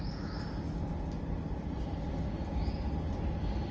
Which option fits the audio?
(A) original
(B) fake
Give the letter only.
A